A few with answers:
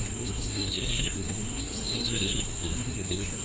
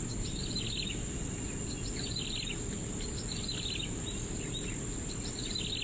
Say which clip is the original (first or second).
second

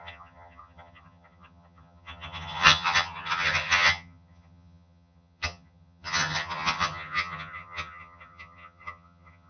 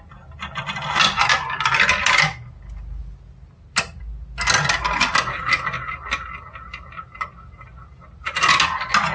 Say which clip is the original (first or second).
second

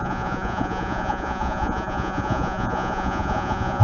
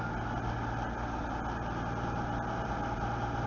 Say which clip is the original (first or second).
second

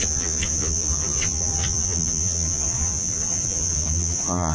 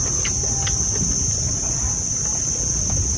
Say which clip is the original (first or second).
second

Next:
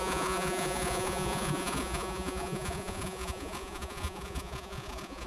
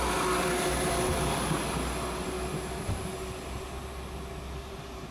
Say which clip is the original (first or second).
second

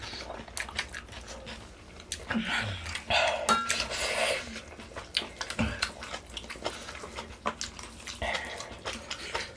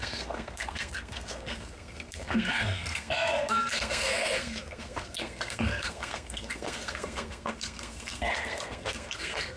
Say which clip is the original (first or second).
first